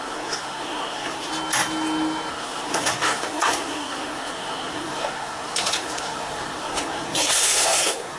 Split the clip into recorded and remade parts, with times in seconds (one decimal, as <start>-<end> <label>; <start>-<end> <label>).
0.0-1.3 remade; 1.3-2.3 recorded; 2.3-8.2 remade